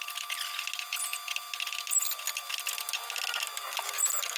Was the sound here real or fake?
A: real